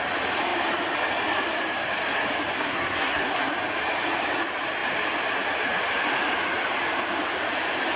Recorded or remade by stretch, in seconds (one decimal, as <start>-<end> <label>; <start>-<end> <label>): 0.0-2.5 recorded; 2.5-3.5 remade; 3.5-8.0 recorded